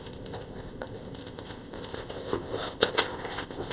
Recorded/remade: remade